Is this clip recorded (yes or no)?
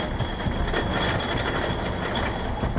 yes